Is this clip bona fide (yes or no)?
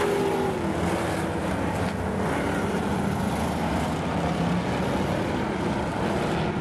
yes